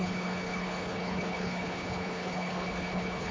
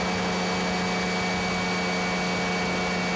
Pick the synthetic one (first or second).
first